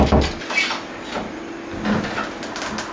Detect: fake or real real